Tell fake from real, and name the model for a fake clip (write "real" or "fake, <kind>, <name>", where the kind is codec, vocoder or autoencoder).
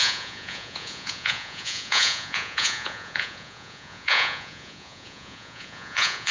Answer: fake, vocoder, Vocos